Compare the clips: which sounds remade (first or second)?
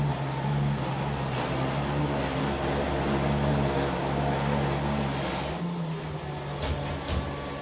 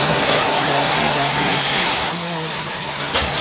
second